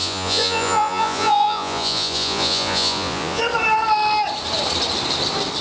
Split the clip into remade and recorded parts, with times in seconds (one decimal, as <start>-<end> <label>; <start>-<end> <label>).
0.0-3.4 remade; 3.4-5.6 recorded